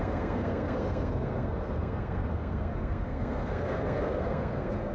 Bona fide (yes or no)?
no